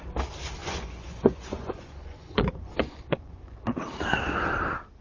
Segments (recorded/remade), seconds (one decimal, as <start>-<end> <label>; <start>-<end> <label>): 0.0-0.6 recorded; 0.6-3.6 remade; 3.6-5.0 recorded